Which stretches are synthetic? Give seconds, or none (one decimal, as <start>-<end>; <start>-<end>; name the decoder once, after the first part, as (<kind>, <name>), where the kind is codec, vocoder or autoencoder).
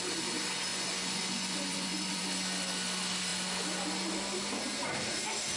0.7-2.2 (vocoder, Vocos)